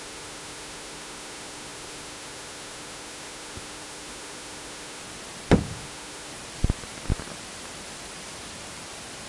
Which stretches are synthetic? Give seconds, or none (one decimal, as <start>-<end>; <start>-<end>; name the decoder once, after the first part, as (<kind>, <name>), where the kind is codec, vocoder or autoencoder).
0.0-5.0 (autoencoder, DAC-VAE); 5.6-6.3